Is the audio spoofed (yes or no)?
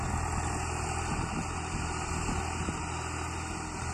no